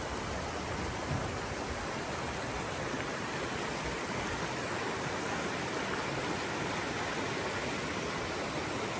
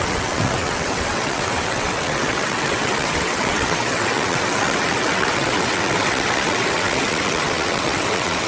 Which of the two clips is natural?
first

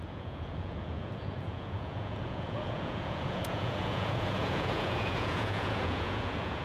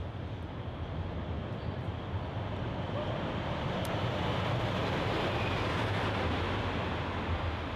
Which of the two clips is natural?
second